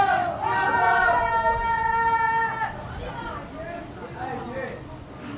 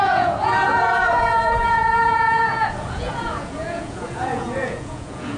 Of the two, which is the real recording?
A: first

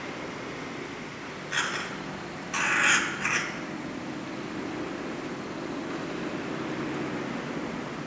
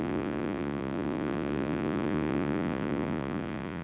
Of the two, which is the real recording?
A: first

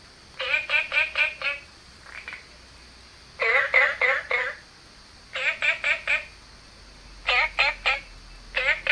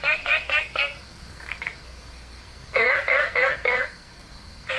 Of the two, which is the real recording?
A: first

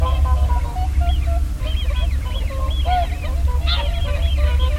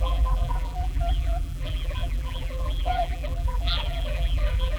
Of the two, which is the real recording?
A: first